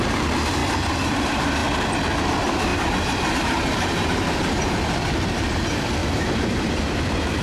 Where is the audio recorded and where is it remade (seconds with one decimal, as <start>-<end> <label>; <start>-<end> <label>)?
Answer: 0.0-0.6 remade; 0.6-1.1 recorded; 1.1-1.6 remade; 1.6-2.2 recorded; 2.2-7.4 remade